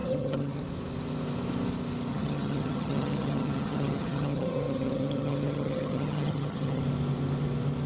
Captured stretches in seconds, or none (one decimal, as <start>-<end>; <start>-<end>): 0.6-2.1; 6.8-7.9